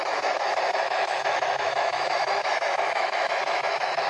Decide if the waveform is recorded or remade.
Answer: remade